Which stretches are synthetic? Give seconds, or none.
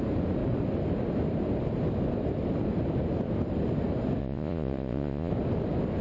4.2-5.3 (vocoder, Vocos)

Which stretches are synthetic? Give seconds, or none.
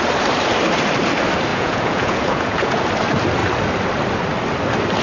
1.5-2.8 (vocoder, Vocos)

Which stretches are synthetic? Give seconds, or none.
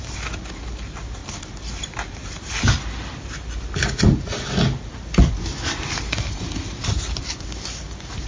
none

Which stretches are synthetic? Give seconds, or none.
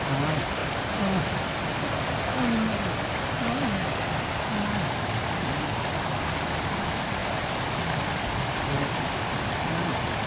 none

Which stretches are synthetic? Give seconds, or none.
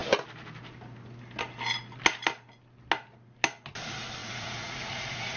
4.2-5.4 (vocoder, Vocos)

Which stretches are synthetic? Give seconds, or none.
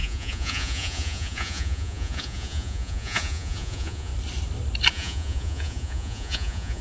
0.0-4.1 (vocoder, Vocos); 4.9-6.8